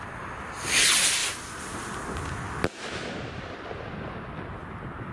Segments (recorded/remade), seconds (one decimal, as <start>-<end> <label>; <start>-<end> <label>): 0.0-5.1 recorded